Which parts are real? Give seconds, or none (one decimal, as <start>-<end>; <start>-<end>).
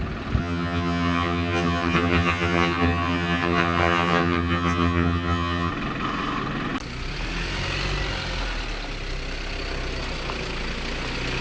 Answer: 0.0-0.4; 5.7-11.4